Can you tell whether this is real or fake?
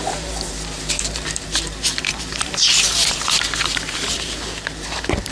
fake